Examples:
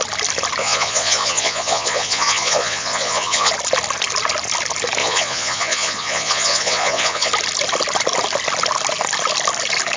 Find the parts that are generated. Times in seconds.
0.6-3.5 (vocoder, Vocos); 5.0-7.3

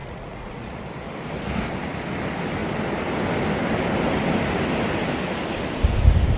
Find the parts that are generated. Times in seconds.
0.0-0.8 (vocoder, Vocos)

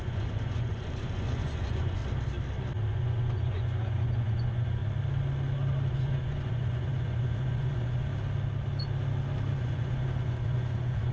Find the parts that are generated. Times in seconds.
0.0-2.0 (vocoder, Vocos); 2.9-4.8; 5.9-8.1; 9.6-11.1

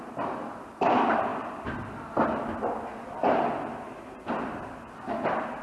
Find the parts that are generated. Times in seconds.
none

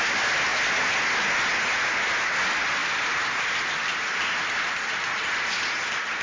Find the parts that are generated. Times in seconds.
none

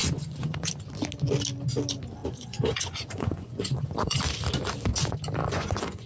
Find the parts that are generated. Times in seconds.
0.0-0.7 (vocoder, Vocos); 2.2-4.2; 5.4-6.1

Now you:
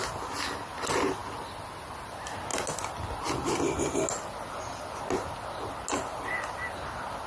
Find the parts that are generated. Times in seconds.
none

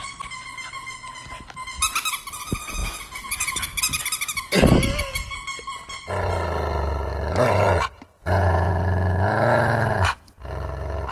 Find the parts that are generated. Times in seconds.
2.8-4.0 (vocoder, Vocos); 8.2-8.7